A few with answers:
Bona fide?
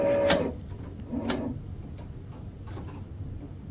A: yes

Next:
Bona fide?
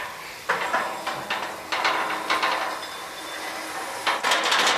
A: yes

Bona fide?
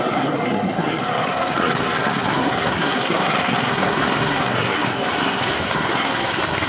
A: no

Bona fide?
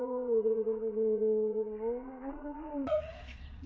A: no